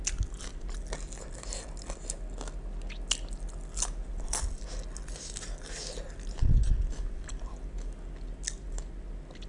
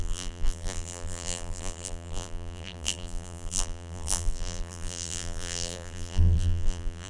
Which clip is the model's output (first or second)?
second